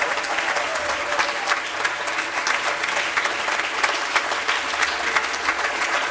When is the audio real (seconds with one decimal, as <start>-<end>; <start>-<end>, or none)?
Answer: 0.0-5.5

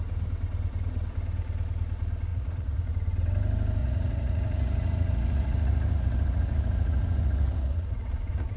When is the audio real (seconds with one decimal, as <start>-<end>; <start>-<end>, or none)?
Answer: 0.0-2.3; 2.9-3.8